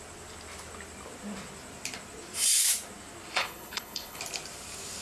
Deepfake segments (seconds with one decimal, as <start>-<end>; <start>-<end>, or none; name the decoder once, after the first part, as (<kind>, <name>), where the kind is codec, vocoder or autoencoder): 3.4-4.2 (codec, HILCodec)